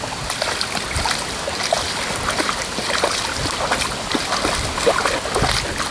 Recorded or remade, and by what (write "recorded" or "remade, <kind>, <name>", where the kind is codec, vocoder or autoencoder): recorded